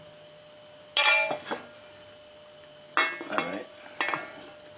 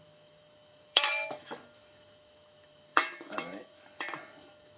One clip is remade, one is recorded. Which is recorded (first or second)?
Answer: first